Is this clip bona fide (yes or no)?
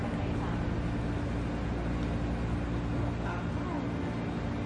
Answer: yes